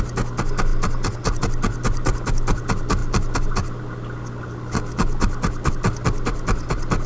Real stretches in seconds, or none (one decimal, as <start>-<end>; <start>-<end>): 0.0-7.1